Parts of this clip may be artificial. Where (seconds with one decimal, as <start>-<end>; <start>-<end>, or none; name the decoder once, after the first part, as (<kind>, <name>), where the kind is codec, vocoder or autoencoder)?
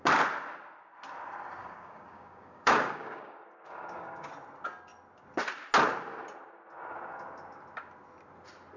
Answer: 1.6-4.3 (codec, DAC)